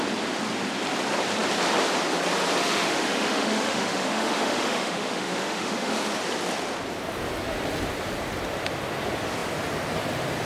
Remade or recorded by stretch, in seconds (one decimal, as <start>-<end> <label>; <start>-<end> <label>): 0.0-2.6 recorded; 2.6-6.0 remade; 6.0-10.5 recorded